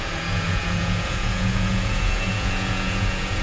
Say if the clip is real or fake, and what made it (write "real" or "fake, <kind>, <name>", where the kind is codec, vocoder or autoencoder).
fake, vocoder, Vocos